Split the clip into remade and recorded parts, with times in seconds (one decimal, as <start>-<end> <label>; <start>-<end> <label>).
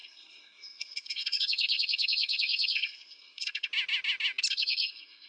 0.0-3.7 remade; 3.7-4.5 recorded; 4.5-5.3 remade